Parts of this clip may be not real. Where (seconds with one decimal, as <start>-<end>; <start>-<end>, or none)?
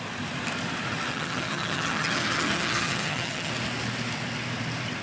1.1-3.5